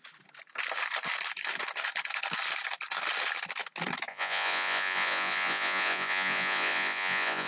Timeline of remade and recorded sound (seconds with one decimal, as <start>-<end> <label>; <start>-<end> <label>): 0.0-4.1 recorded; 4.1-7.5 remade